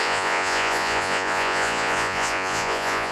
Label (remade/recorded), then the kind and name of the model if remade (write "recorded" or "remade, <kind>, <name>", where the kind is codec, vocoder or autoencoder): remade, vocoder, Vocos